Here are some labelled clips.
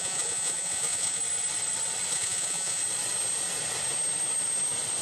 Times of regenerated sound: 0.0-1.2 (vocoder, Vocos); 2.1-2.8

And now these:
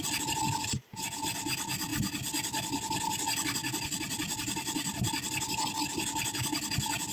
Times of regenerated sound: none

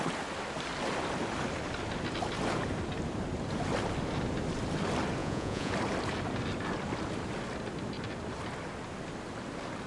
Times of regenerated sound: 5.2-5.7 (vocoder, Vocos)

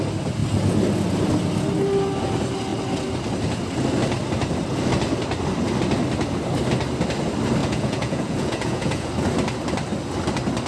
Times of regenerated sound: 7.6-9.1 (vocoder, Vocos)

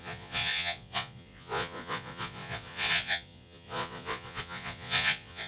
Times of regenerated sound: 0.0-5.5 (vocoder, Vocos)

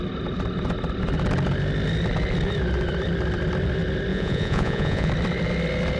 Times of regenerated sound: 4.1-5.1 (vocoder, Vocos)

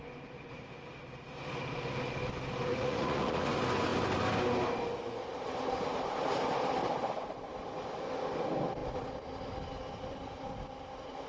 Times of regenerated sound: 2.7-3.5 (vocoder, Vocos)

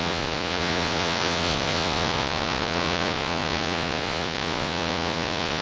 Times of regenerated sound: 0.0-5.6 (vocoder, Vocos)